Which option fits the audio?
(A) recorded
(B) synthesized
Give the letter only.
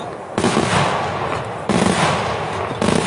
A